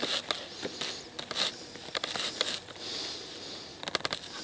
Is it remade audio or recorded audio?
recorded